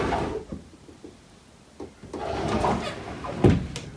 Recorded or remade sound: recorded